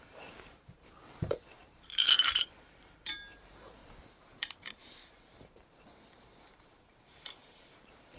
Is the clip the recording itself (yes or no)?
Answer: no